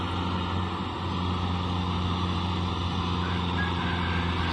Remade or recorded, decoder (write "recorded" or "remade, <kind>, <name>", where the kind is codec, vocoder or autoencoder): recorded